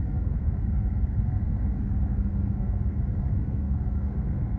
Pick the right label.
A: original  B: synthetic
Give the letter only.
B